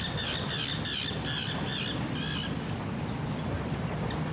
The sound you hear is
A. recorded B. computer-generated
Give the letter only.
A